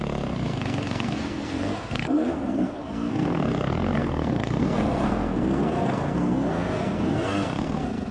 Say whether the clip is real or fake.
fake